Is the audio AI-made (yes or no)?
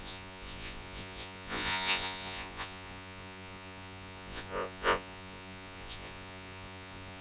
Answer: yes